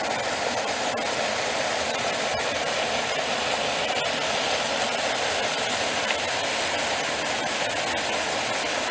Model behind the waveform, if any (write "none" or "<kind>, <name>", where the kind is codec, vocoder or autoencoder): none